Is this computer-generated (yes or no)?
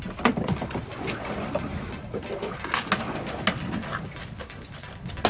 no